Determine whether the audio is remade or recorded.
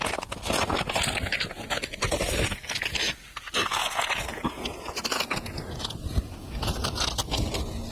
recorded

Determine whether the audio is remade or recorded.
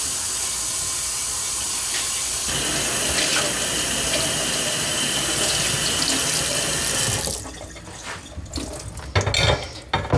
recorded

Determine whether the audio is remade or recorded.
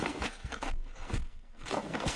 remade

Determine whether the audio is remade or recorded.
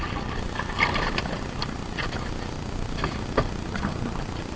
recorded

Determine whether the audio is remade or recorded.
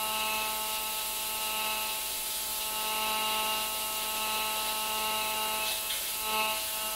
remade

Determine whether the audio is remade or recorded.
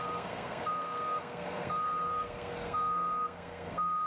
remade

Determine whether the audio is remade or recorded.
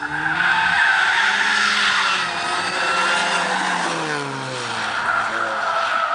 recorded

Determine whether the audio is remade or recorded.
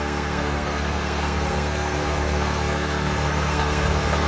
remade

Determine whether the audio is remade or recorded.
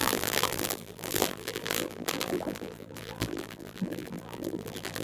remade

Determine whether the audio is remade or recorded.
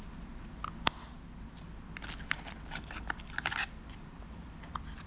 recorded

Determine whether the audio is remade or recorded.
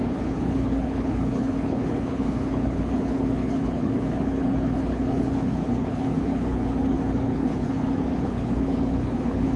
remade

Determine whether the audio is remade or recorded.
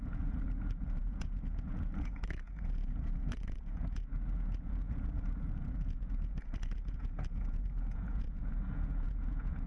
remade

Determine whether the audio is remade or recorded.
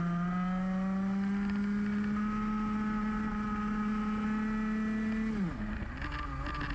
recorded